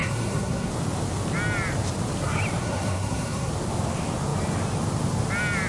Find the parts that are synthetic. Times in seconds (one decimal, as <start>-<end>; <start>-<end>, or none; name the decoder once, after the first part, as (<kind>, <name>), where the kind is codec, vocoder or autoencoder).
0.0-0.7 (codec, SNAC); 2.6-3.5